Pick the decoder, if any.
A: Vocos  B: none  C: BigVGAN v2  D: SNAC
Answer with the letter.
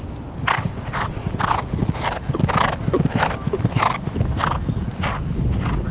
B